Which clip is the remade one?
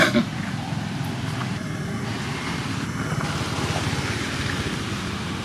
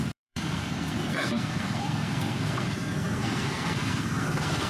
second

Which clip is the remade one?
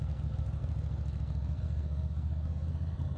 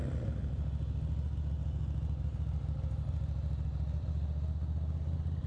first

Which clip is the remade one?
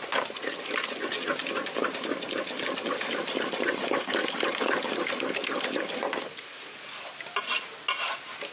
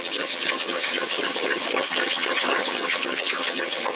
second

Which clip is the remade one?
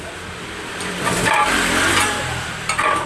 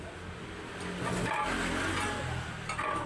first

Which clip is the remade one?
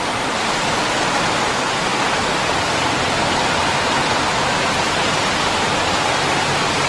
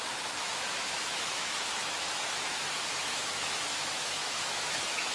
second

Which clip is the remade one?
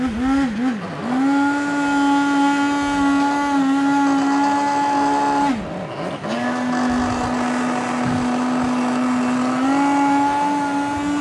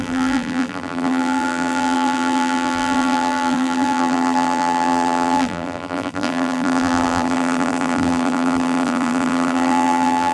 second